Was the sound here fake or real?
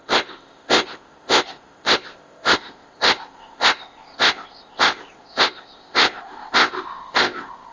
fake